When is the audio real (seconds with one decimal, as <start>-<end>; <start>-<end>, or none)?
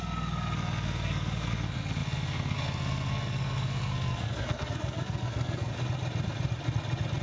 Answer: 5.7-7.2